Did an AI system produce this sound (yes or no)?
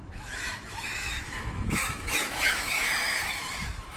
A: yes